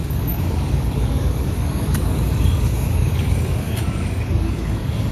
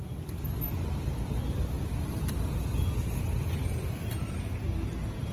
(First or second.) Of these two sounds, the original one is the second